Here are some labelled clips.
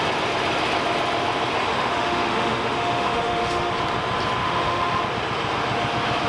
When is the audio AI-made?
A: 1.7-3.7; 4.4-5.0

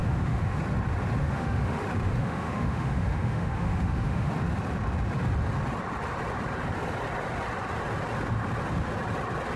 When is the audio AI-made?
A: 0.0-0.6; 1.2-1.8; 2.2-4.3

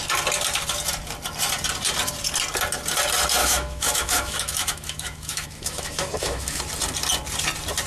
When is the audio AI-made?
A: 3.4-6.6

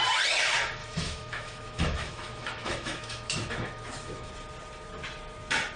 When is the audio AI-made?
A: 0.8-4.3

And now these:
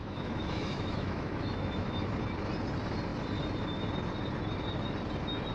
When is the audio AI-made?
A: 0.0-2.1

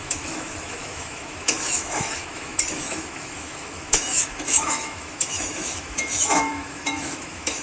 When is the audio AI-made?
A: 0.0-7.6

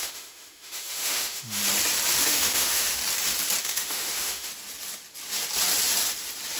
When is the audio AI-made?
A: 0.0-1.6; 2.2-3.0; 3.6-4.5

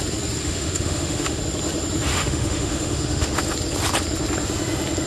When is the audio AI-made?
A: 0.4-1.4; 2.1-3.4